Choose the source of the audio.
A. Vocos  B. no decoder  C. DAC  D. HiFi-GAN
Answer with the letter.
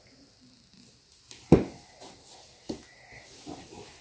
B